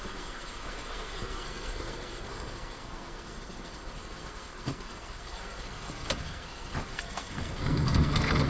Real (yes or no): no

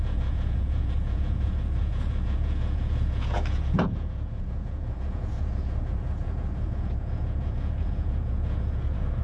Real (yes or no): no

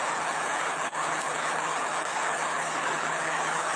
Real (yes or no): no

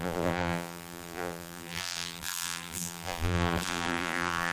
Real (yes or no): no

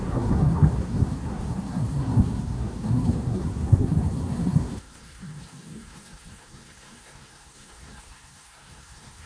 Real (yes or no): no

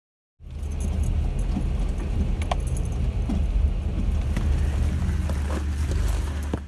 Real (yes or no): yes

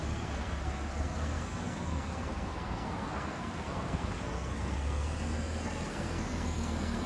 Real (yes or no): no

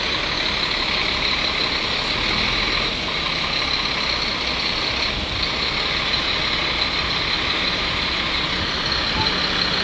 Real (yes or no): yes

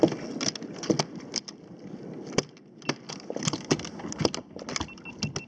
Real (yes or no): yes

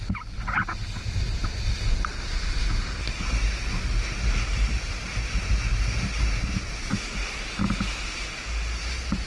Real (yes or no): yes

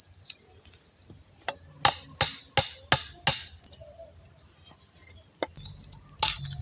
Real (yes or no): yes